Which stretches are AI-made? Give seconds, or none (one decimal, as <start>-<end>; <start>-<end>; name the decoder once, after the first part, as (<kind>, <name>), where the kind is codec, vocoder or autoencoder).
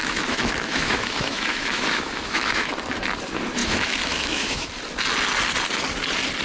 0.0-2.7 (autoencoder, DAC-VAE); 3.6-4.7